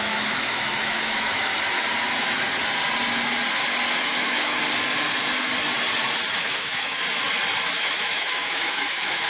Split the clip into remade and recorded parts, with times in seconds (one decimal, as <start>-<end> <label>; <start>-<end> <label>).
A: 0.0-1.5 remade; 1.5-4.0 recorded; 4.0-4.6 remade; 4.6-6.4 recorded; 6.4-7.0 remade; 7.0-7.8 recorded; 7.8-9.3 remade